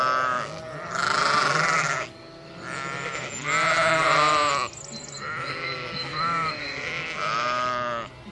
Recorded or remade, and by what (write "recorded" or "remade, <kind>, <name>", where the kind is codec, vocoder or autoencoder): recorded